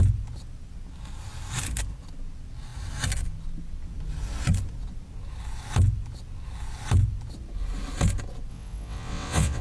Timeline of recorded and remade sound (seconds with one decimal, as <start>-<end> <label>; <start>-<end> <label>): 0.0-8.5 recorded; 8.5-9.6 remade